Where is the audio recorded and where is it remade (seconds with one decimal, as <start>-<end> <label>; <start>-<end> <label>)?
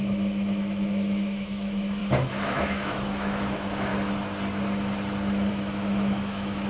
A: 0.0-3.9 remade; 3.9-5.5 recorded; 5.5-6.7 remade